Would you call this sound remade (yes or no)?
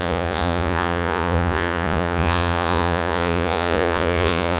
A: yes